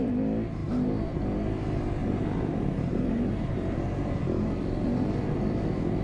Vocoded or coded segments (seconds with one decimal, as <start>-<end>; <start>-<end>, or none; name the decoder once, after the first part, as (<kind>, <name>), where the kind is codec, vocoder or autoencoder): 0.6-1.1 (vocoder, BigVGAN v2); 2.0-4.2